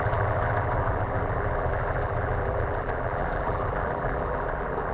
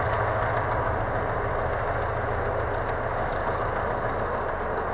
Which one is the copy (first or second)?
first